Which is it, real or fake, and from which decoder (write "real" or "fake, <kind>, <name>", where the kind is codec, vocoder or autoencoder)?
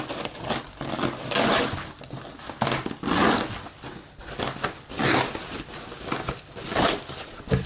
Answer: real